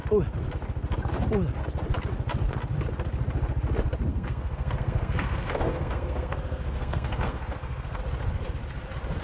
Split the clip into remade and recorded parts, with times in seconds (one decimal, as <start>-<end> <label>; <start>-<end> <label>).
0.0-4.1 recorded; 4.1-8.0 remade; 8.0-9.2 recorded